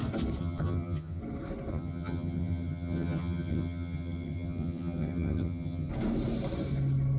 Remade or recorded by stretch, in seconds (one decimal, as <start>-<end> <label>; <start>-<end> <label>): 0.0-0.4 recorded; 0.4-1.2 remade; 1.2-1.7 recorded; 1.7-5.9 remade; 5.9-7.2 recorded